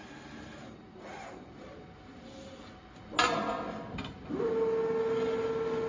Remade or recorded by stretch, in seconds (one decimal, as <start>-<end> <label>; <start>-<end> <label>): 0.0-5.9 recorded